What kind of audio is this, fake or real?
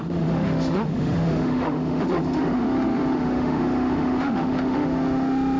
fake